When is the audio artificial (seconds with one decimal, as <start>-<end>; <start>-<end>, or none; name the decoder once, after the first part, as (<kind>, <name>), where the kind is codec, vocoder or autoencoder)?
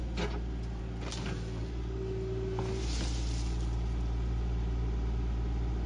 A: none